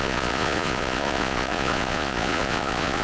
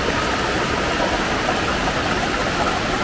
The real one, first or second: second